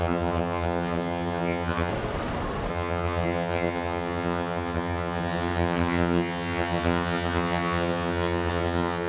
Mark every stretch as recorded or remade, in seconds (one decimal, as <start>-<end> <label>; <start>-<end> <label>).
0.0-1.9 remade; 1.9-2.7 recorded; 2.7-9.1 remade